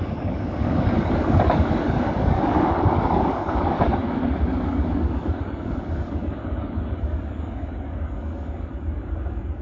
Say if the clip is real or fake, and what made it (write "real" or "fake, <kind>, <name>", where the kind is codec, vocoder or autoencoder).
fake, codec, DAC